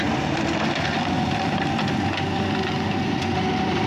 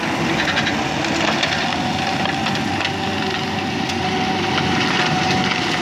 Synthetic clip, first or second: first